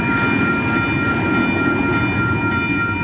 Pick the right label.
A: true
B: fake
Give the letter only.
A